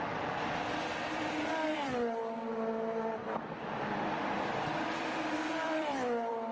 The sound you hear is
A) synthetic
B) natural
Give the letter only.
A